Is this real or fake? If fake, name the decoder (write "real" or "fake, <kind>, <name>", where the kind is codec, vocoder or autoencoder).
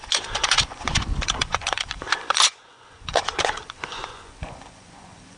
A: fake, vocoder, Vocos